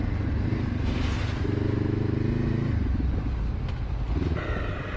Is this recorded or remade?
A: recorded